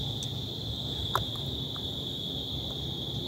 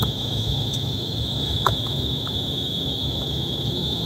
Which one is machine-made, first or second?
second